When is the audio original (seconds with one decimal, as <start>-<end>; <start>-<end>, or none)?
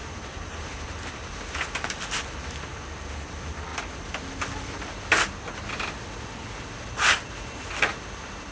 0.0-8.5